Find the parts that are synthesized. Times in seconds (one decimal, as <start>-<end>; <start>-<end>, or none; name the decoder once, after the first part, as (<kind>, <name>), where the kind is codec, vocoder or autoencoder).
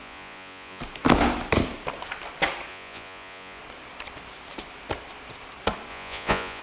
0.0-0.8 (vocoder, Vocos); 2.7-3.6; 5.9-6.6